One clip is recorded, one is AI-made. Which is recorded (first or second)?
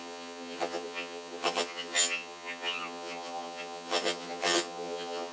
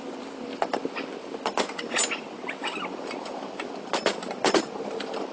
second